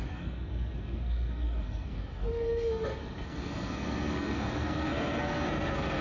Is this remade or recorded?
remade